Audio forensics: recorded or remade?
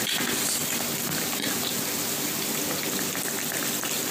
recorded